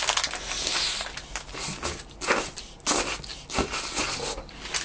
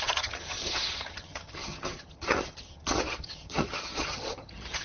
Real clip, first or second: first